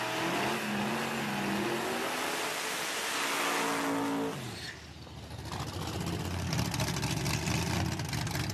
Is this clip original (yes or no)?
yes